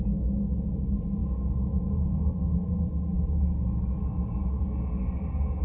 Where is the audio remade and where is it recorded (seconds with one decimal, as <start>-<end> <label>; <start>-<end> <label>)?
0.0-5.6 recorded